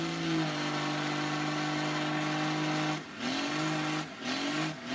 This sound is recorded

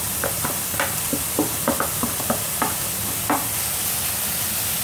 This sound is recorded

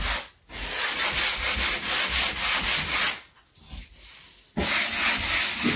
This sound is recorded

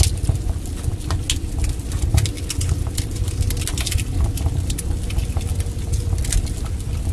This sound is recorded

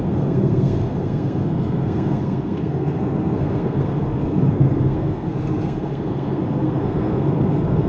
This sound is remade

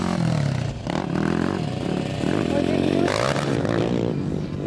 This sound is recorded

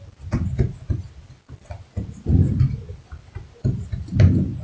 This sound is recorded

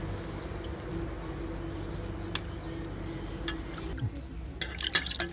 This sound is recorded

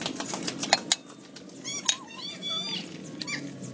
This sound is recorded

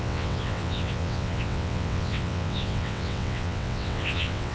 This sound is remade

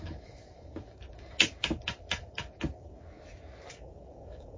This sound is remade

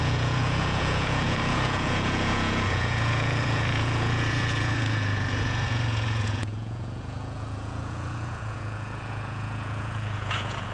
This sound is remade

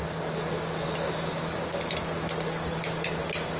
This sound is recorded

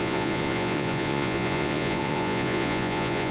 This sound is remade